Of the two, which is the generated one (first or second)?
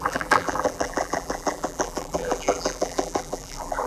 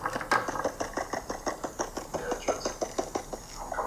first